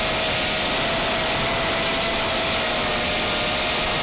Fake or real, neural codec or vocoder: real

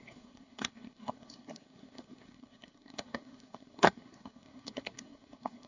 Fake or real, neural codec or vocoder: fake, codec, SNAC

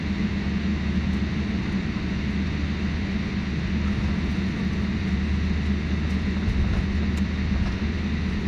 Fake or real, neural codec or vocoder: real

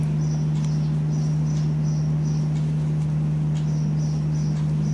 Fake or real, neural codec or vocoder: real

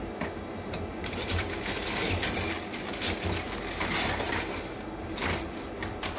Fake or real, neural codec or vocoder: real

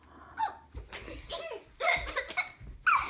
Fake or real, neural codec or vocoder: real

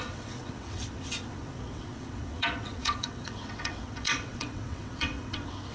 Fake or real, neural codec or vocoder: fake, vocoder, WaveNeXt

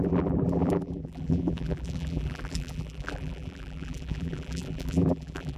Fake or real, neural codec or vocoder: fake, vocoder, BigVGAN v2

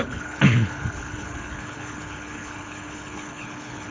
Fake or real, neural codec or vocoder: fake, codec, HILCodec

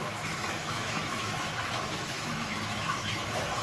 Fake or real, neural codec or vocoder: fake, autoencoder, DAC-VAE